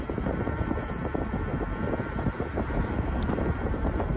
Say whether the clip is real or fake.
real